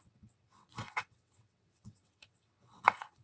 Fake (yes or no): yes